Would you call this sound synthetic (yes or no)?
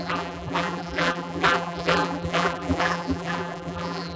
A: yes